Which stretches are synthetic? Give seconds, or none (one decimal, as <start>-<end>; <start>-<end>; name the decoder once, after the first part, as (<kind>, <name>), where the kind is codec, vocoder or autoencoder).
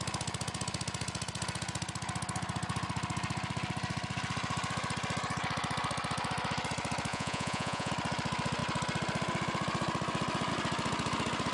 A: 7.1-7.9 (vocoder, Vocos)